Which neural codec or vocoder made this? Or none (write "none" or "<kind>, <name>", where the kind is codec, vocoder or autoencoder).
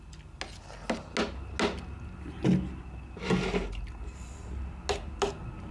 none